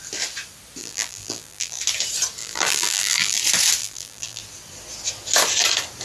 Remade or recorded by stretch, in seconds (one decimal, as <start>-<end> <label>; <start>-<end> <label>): 0.0-0.8 recorded; 0.8-1.8 remade; 1.8-2.4 recorded; 2.4-3.4 remade; 3.4-3.8 recorded; 3.8-4.4 remade; 4.4-6.0 recorded